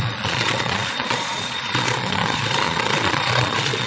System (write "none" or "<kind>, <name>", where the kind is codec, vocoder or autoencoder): vocoder, Vocos